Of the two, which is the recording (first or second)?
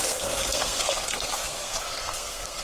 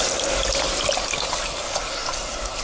second